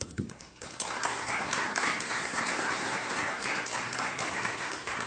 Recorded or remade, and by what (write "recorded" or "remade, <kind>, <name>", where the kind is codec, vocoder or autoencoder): remade, codec, SNAC